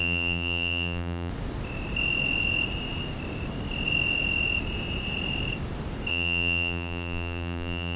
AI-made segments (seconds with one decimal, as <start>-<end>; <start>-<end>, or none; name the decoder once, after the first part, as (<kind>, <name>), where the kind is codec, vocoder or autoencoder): 0.0-1.3 (vocoder, BigVGAN v2); 6.1-8.0